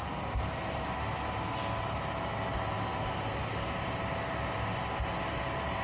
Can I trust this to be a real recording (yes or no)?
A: yes